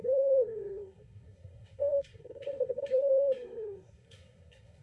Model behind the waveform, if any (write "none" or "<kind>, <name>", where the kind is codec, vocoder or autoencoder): codec, SNAC